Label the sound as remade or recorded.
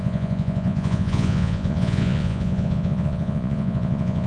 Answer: remade